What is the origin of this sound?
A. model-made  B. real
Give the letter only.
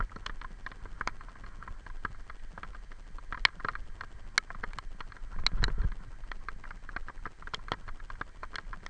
B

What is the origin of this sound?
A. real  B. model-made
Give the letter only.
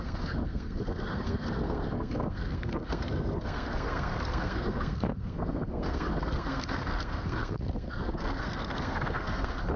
B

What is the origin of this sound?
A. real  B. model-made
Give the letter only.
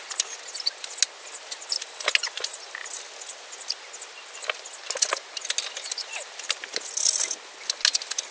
A